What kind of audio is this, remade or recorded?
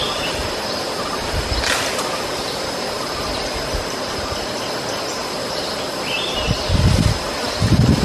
recorded